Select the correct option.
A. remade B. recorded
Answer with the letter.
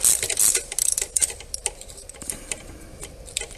B